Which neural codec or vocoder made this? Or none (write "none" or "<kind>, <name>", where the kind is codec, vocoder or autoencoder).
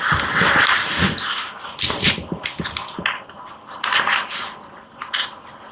none